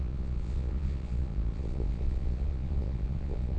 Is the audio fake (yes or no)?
yes